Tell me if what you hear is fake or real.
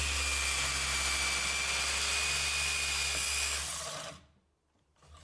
real